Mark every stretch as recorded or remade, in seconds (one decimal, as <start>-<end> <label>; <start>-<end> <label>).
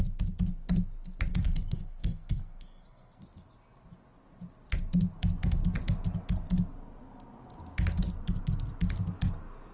0.0-1.3 recorded; 1.3-3.2 remade; 3.2-9.7 recorded